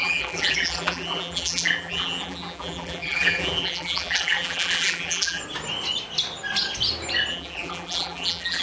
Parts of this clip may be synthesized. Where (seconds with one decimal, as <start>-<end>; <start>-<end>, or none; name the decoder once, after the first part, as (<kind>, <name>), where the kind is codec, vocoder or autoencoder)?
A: 0.0-5.4 (vocoder, BigVGAN v2); 7.3-8.6